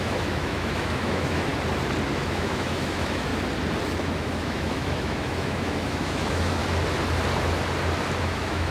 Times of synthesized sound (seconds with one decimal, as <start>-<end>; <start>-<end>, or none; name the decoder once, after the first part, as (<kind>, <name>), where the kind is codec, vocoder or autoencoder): 0.0-1.5 (autoencoder, DAC-VAE); 2.1-3.3; 4.0-6.6; 8.2-8.7